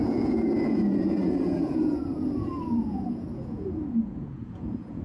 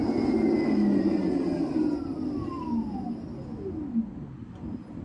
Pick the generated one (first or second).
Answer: first